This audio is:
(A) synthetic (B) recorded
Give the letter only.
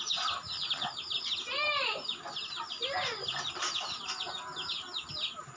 B